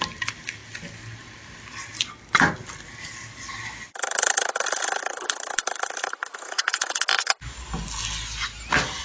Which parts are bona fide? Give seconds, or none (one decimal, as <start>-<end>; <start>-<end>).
0.0-6.3; 7.0-9.0